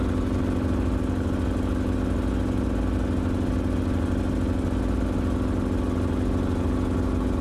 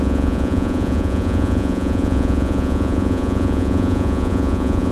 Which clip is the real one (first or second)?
first